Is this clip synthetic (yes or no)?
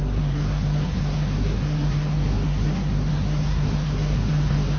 yes